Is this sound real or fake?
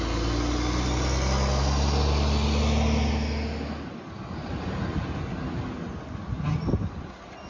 real